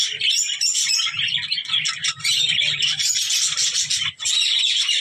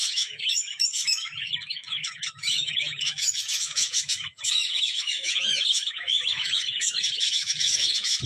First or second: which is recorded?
first